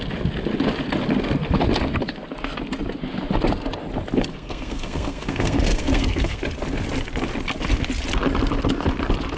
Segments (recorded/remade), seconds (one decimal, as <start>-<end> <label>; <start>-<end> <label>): 0.0-4.3 recorded; 4.3-6.4 remade; 6.4-9.4 recorded